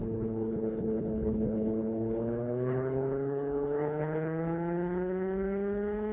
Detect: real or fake fake